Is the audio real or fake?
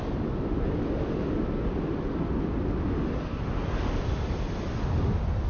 real